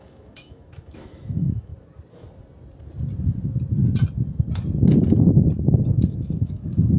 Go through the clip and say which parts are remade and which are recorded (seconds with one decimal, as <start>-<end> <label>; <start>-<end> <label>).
0.0-1.7 remade; 1.7-5.9 recorded; 5.9-7.0 remade